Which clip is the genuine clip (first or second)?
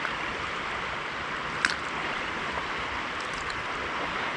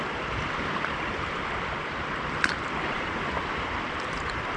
first